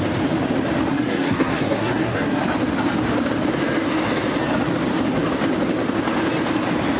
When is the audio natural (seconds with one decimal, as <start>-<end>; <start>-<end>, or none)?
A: 0.0-0.9; 2.4-7.0